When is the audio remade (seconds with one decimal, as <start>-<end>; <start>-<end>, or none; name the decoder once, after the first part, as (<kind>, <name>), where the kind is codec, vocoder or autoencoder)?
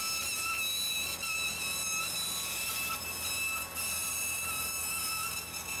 none